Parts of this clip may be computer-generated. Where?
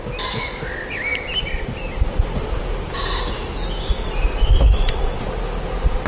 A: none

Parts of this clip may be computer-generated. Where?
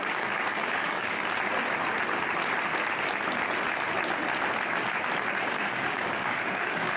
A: 0.0-1.2; 5.4-7.0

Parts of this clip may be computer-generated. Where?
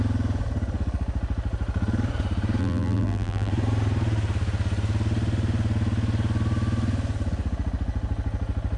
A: 2.6-3.5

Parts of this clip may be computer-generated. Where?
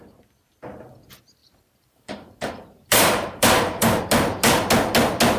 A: 1.4-4.0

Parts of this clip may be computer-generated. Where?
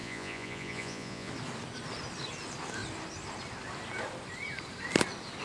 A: 0.0-1.3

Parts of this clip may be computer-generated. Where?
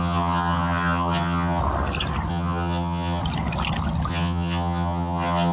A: 0.0-1.6; 2.3-3.2; 4.1-5.5